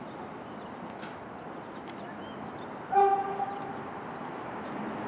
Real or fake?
real